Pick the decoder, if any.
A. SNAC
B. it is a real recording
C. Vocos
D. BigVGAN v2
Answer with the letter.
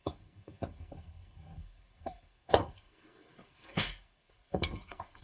A